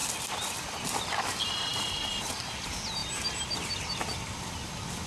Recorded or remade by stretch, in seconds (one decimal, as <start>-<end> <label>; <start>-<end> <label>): 0.0-1.1 remade; 1.1-1.7 recorded; 1.7-2.4 remade; 2.4-3.0 recorded; 3.0-5.1 remade